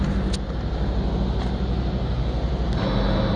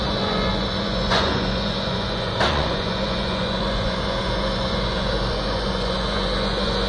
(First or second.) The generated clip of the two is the second